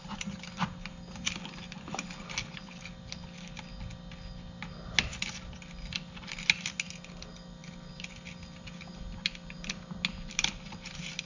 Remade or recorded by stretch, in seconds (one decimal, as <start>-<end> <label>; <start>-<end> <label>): 0.0-11.3 recorded